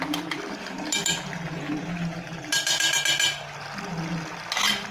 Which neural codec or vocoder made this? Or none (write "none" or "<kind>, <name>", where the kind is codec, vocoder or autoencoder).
none